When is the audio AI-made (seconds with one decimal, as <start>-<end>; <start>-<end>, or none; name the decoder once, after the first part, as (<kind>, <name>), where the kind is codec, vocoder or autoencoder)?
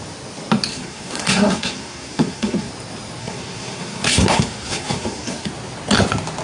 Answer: 0.7-2.7 (codec, SNAC); 3.2-5.5